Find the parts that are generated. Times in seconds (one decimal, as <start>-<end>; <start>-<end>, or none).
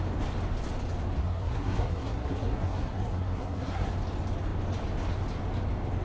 1.2-3.9